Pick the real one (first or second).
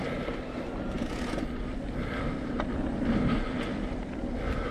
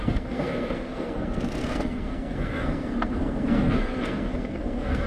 first